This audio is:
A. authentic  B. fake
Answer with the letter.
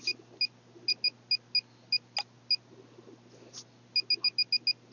A